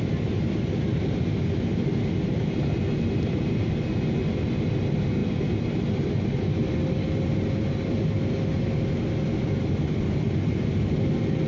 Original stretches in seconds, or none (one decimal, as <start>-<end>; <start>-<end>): 0.0-11.5

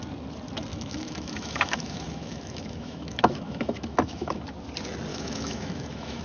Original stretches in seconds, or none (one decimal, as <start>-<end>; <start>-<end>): 0.0-0.7; 4.4-5.1